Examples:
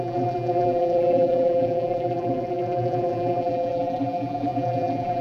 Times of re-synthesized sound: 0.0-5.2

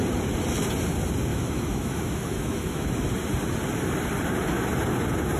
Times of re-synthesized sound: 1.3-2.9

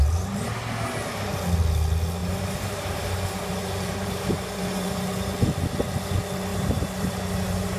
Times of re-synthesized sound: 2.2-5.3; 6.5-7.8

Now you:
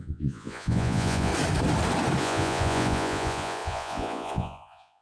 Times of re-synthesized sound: 0.0-1.3; 2.2-5.0

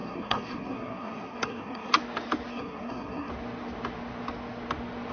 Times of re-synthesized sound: 0.0-1.9; 2.5-3.3

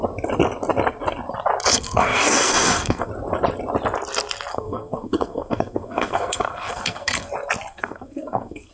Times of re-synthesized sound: 1.7-3.1; 4.5-7.3; 7.7-8.7

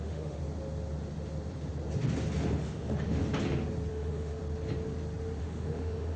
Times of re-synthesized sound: 0.0-0.4; 2.6-3.2; 3.9-4.4; 5.4-6.2